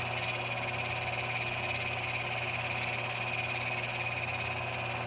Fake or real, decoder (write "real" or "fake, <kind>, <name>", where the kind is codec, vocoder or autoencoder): real